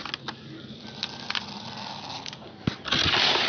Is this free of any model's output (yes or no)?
yes